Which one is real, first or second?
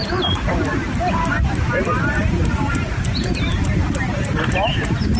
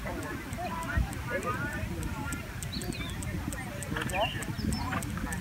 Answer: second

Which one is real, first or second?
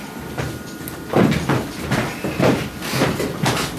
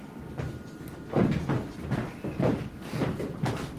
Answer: first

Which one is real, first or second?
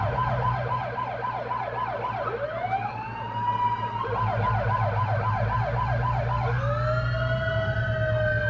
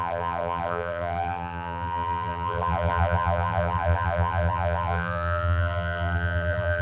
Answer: first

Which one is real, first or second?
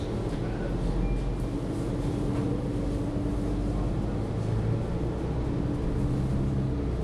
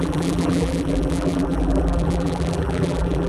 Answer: first